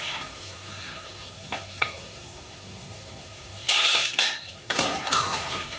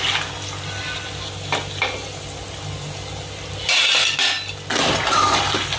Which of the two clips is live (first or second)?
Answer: second